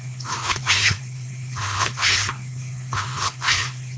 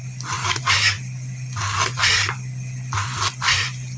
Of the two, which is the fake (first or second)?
first